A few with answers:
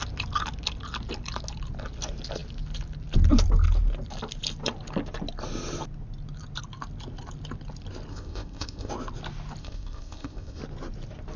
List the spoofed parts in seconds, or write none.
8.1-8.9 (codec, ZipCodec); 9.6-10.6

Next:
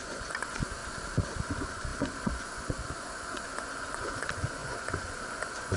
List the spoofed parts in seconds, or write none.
0.0-0.8 (vocoder, Vocos); 1.4-5.8

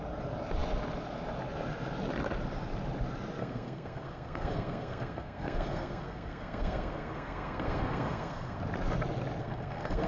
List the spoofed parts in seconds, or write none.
3.4-8.6 (codec, SNAC); 9.4-10.1

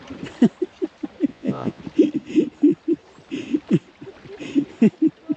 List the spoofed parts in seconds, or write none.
1.3-1.8 (vocoder, Vocos)

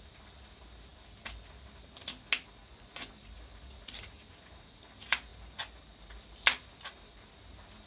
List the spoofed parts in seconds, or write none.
2.6-3.2 (vocoder, Vocos)

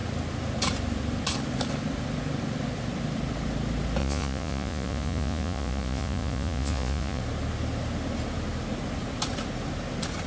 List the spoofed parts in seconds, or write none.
4.0-7.2 (vocoder, Vocos)